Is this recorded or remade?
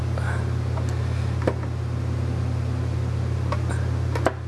recorded